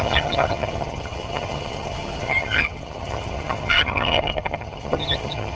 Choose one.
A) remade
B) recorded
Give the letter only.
A